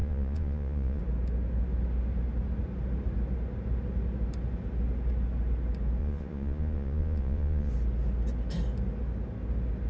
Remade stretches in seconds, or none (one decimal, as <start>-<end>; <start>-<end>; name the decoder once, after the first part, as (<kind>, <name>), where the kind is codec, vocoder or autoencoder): 0.0-1.0 (vocoder, Vocos); 6.0-7.7